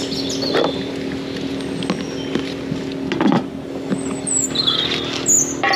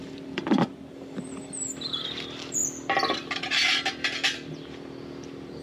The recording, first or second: first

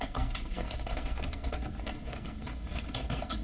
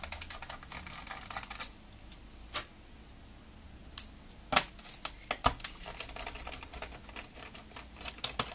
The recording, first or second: second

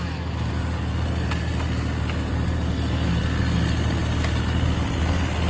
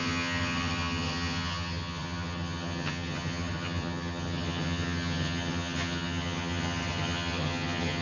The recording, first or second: first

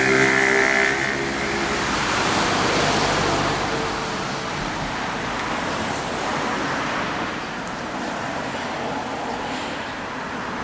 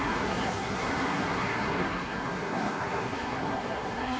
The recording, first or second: first